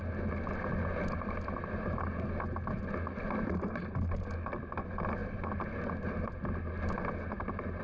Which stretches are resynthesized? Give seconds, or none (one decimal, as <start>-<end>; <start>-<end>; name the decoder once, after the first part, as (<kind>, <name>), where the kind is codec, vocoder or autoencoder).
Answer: none